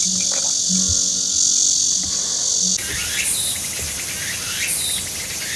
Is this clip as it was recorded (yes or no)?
yes